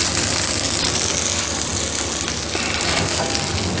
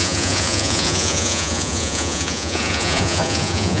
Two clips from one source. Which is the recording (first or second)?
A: first